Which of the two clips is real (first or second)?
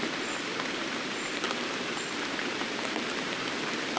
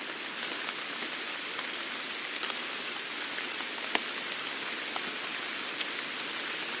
second